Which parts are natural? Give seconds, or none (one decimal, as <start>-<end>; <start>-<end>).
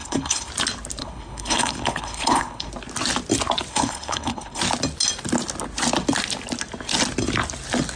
0.5-1.0; 2.7-3.7; 4.6-8.0